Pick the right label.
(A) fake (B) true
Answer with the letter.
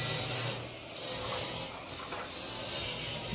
B